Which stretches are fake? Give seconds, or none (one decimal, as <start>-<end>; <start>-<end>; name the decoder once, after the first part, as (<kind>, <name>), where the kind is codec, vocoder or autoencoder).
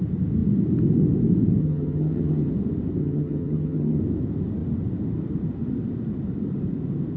1.6-2.5 (vocoder, HiFi-GAN); 3.0-4.0